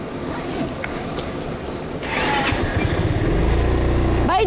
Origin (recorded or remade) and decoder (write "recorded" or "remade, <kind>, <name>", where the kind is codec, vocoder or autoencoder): recorded